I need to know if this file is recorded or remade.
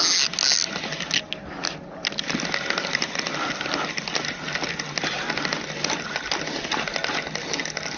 recorded